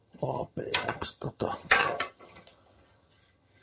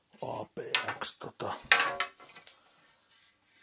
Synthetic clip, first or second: first